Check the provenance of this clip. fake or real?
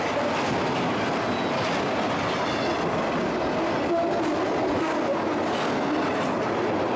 real